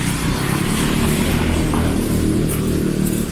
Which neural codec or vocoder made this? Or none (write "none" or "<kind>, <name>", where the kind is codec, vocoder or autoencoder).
none